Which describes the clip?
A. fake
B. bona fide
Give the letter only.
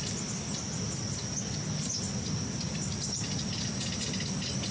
B